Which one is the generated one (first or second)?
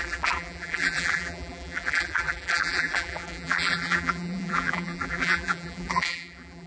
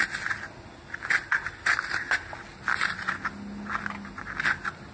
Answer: first